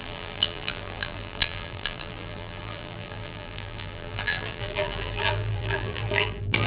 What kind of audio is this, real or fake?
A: fake